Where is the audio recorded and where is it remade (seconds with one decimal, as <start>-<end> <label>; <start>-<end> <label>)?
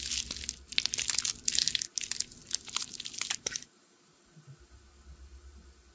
0.0-2.4 recorded; 2.4-4.4 remade; 4.4-5.9 recorded